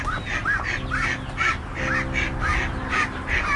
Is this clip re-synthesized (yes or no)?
no